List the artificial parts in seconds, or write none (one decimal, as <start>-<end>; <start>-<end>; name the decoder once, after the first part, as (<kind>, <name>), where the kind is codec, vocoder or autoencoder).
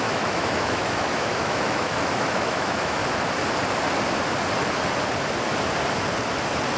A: 0.0-3.0 (autoencoder, DAC-VAE)